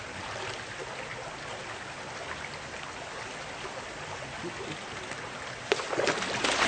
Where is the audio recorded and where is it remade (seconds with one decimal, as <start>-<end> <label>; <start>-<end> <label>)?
0.0-6.7 recorded